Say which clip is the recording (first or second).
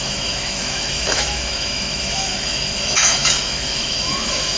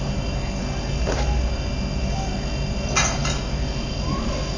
second